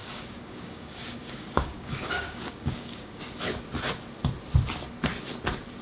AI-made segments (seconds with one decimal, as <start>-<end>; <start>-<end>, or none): 0.0-3.2